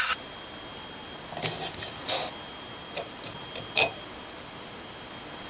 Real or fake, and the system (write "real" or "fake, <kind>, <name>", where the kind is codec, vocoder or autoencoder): real